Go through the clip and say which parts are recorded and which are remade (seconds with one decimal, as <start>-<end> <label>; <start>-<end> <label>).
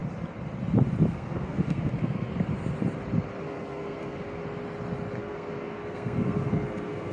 0.0-1.1 recorded; 1.1-2.3 remade; 2.3-3.4 recorded; 3.4-4.4 remade; 4.4-5.2 recorded; 5.2-7.1 remade